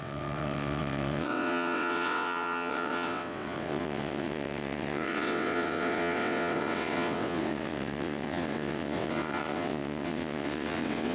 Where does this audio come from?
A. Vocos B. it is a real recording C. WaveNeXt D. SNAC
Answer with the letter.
C